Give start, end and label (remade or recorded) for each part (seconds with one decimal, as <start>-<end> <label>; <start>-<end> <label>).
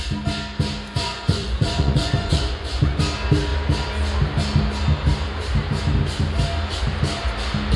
0.0-0.9 recorded; 0.9-3.0 remade; 3.0-7.8 recorded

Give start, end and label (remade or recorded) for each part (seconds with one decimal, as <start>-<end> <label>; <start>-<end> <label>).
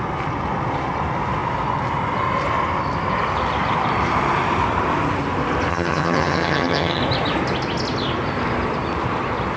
0.0-5.7 recorded; 5.7-7.0 remade; 7.0-9.6 recorded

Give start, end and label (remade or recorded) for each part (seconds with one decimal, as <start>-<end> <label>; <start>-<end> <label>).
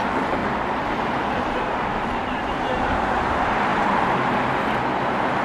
0.0-0.4 recorded; 0.4-2.9 remade; 2.9-3.7 recorded; 3.7-4.4 remade; 4.4-5.4 recorded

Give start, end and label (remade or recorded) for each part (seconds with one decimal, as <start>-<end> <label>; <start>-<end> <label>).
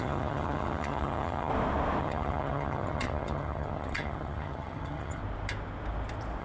0.0-1.5 remade; 1.5-2.0 recorded; 2.0-5.2 remade; 5.2-6.4 recorded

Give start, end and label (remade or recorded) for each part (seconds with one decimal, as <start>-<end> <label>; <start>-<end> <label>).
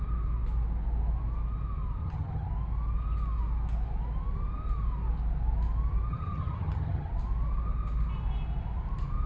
0.0-2.0 recorded; 2.0-2.5 remade; 2.5-6.1 recorded; 6.1-7.1 remade; 7.1-9.3 recorded